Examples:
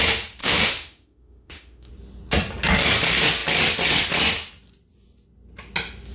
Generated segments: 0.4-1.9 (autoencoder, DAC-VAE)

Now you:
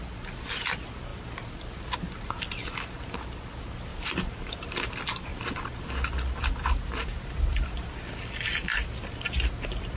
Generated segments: 1.1-2.0 (vocoder, BigVGAN v2); 3.9-4.6; 5.3-9.4

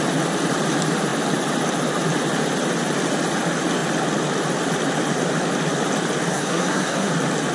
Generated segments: 6.3-7.1 (codec, SNAC)

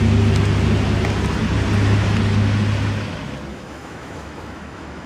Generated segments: 3.5-5.1 (autoencoder, DAC-VAE)

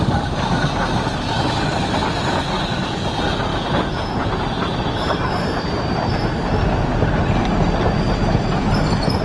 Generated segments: 3.5-4.3 (vocoder, Vocos)

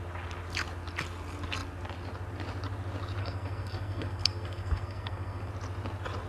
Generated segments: 3.2-5.5 (codec, SNAC)